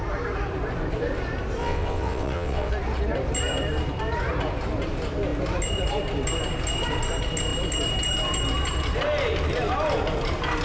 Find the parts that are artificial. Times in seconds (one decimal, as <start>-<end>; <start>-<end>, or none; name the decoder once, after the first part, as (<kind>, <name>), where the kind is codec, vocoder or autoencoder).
1.6-2.7 (vocoder, WaveNeXt)